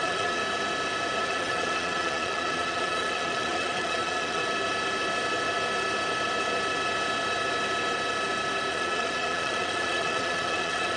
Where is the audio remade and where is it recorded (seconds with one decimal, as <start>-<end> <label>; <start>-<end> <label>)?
0.0-0.4 remade; 0.4-1.2 recorded; 1.2-4.4 remade; 4.4-8.7 recorded; 8.7-11.0 remade